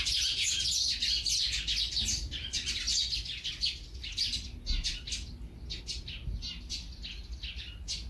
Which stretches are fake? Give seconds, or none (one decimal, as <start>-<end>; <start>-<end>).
none